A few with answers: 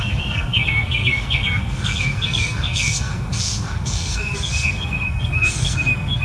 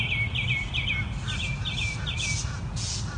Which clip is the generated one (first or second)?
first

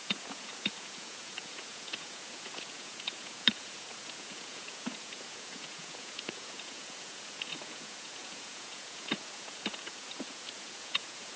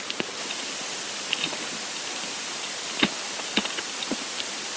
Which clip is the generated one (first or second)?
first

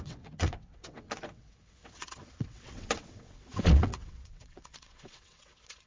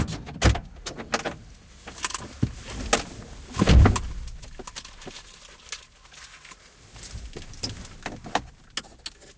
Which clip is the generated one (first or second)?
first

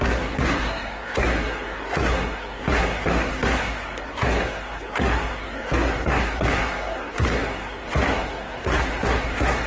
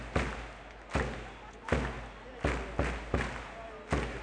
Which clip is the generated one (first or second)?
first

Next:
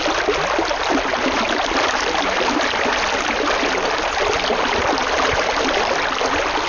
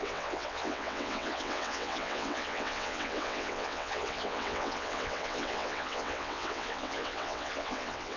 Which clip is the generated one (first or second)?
second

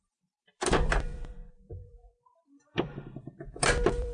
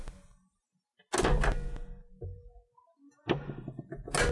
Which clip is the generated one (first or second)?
first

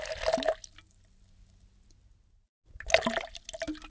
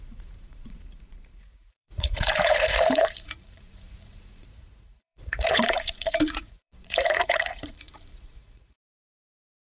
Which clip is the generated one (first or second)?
second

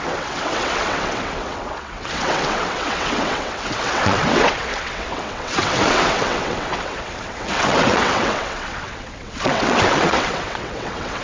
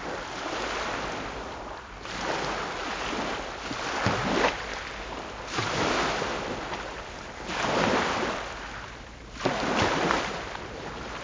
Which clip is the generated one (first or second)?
first